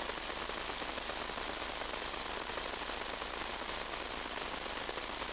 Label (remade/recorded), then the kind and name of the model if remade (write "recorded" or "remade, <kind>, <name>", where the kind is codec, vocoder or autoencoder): recorded